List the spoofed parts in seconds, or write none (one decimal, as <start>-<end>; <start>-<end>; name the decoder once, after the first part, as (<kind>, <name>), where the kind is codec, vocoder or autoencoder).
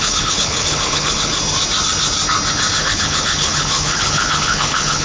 0.0-1.4 (codec, HILCodec); 2.8-5.0